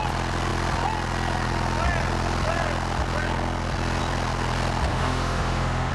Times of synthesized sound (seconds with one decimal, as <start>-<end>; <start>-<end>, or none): 4.9-5.9